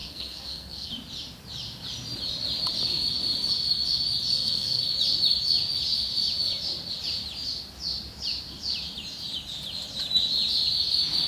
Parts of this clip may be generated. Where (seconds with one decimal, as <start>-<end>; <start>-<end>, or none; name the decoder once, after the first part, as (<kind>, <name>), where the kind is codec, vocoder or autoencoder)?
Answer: 0.0-0.9 (codec, SNAC); 4.3-4.8